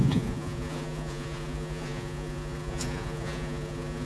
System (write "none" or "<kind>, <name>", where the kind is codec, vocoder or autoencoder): vocoder, Vocos